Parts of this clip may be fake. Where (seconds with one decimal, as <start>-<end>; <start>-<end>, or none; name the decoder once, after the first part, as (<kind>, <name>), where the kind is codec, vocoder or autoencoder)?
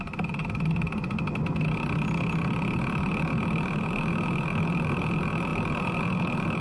none